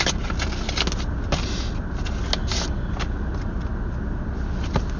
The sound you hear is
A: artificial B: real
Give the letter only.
B